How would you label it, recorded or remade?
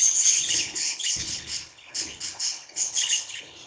remade